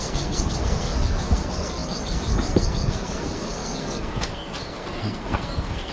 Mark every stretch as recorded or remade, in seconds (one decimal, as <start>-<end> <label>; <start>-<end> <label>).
0.0-5.9 remade